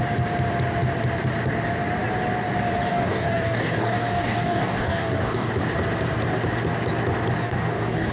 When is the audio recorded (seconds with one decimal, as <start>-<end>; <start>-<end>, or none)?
0.0-2.9; 5.5-7.4